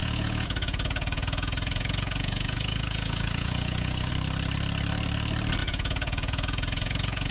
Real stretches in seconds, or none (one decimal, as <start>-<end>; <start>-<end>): 4.1-5.6